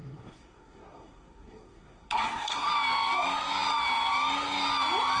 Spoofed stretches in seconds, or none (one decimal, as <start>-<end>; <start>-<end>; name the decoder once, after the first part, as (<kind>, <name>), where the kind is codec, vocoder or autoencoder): 0.0-2.7 (codec, SNAC)